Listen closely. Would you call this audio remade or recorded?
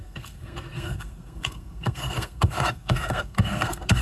remade